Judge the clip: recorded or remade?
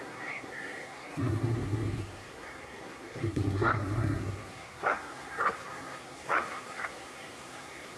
remade